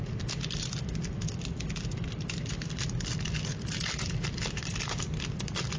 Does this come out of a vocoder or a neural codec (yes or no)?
yes